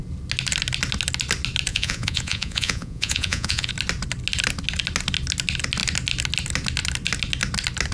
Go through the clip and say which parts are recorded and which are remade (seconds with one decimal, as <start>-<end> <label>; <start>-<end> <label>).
0.0-1.7 recorded; 1.7-3.7 remade; 3.7-7.9 recorded